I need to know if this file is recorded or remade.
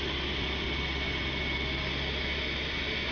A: recorded